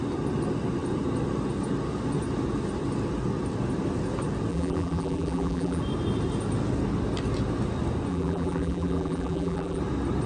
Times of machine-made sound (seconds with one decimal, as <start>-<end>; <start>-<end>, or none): 4.5-5.8; 8.1-9.8